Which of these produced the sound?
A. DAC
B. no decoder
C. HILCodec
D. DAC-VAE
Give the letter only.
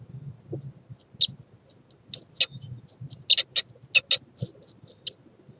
B